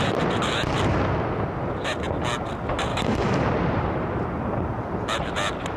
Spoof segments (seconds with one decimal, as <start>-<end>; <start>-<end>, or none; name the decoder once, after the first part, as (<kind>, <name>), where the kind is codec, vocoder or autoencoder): 2.9-3.4 (codec, DAC)